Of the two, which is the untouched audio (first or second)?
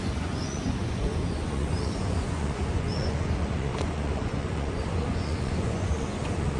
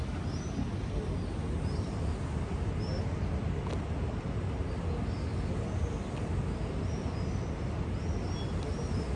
second